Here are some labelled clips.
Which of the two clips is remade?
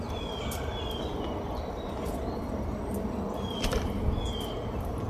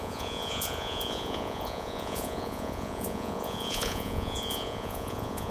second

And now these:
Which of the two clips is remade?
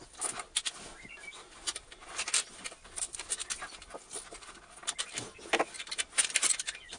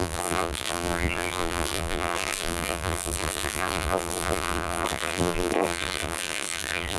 second